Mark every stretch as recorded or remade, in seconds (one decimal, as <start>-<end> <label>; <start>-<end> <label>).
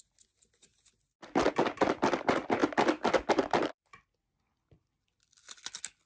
0.0-6.1 recorded